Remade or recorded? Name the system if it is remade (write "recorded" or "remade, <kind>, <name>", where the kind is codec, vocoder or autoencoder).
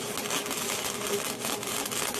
recorded